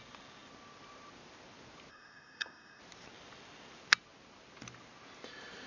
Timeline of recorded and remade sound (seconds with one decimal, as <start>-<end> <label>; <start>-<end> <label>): 0.0-1.9 recorded; 1.9-2.8 remade; 2.8-5.7 recorded